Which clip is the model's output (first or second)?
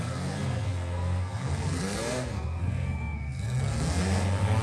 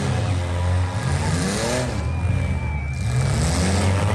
first